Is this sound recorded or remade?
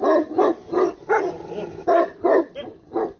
recorded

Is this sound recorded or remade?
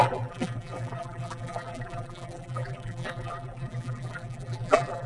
remade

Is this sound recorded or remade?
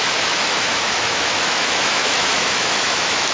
remade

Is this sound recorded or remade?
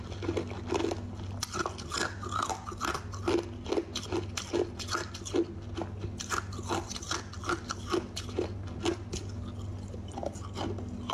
recorded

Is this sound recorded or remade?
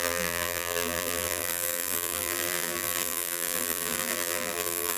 remade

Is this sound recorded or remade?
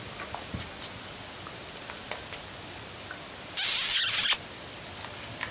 recorded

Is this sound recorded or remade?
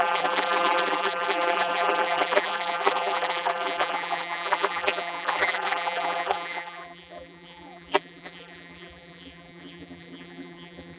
remade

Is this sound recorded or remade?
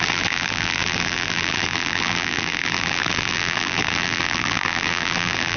remade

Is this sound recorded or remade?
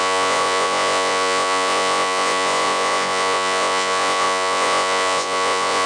remade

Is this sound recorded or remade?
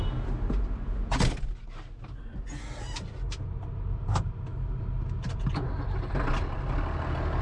recorded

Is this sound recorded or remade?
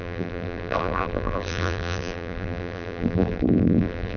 remade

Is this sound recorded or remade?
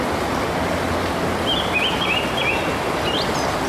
recorded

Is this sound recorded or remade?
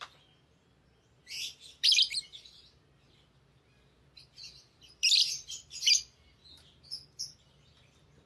remade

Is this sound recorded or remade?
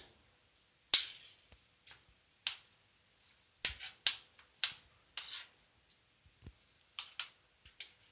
recorded